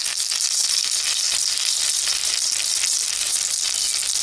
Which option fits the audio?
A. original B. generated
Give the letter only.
A